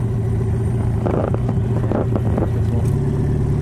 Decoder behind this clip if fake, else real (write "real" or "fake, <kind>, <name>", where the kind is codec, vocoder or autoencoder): real